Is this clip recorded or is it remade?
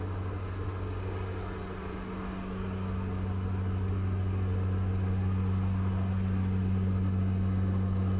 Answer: recorded